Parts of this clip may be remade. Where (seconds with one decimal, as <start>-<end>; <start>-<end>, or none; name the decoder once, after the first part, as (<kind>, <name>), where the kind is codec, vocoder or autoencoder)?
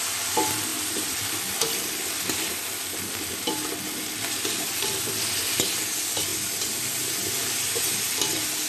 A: 0.7-5.4 (vocoder, BigVGAN v2); 6.3-7.8